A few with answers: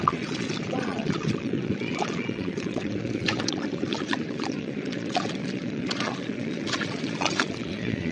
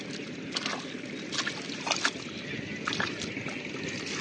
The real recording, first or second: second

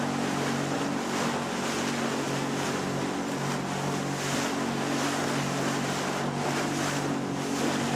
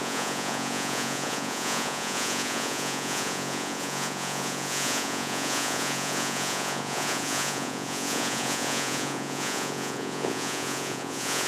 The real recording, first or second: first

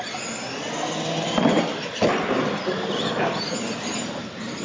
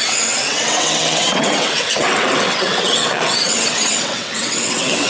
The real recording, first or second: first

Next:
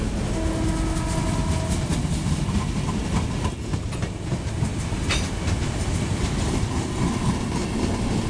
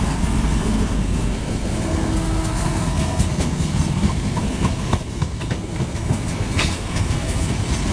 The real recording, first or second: first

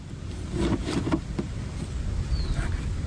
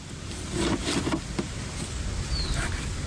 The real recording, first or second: second